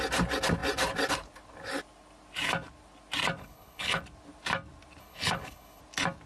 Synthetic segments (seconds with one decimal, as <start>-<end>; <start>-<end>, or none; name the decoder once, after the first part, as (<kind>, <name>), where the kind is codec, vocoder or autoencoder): 3.4-4.0 (codec, HILCodec); 5.0-5.8